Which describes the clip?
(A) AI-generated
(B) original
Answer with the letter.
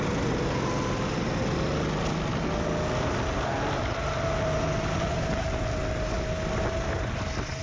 B